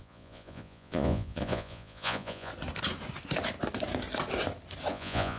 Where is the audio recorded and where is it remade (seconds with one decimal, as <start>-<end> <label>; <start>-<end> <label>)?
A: 0.0-2.5 remade; 2.5-4.9 recorded; 4.9-5.4 remade